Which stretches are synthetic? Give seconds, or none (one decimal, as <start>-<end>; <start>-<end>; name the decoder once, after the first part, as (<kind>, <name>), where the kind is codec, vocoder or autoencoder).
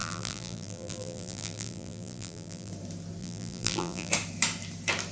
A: 0.0-2.7 (vocoder, BigVGAN v2); 3.2-4.1